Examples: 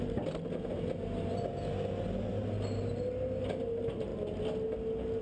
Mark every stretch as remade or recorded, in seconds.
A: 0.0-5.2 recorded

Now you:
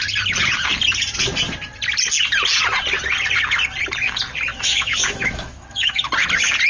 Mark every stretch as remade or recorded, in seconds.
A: 0.0-4.5 recorded; 4.5-6.1 remade; 6.1-6.7 recorded